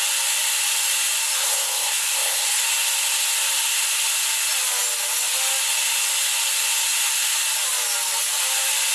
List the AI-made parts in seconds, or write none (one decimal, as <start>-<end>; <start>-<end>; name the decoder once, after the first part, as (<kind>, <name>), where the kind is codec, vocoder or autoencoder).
1.4-2.6 (codec, SNAC)

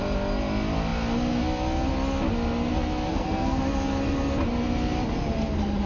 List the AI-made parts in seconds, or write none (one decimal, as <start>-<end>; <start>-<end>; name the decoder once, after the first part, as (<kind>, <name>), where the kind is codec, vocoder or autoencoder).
3.1-3.6 (codec, SNAC)